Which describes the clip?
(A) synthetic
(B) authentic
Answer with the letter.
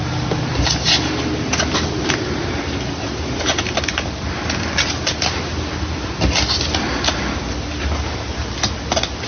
B